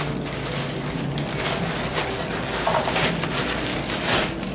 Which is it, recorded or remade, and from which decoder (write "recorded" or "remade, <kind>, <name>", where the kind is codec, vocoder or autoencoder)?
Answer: recorded